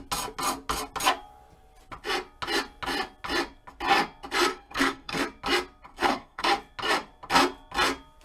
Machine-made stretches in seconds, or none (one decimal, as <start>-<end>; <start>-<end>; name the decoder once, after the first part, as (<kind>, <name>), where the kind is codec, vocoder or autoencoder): 4.5-5.2 (codec, SNAC); 5.9-6.5